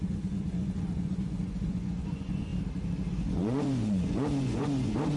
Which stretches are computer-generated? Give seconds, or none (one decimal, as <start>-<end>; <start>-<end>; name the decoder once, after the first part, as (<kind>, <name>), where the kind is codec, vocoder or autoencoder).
0.0-2.5 (vocoder, Vocos); 3.1-5.2